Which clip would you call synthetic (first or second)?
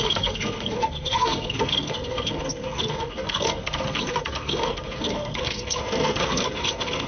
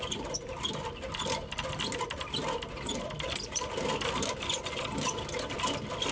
first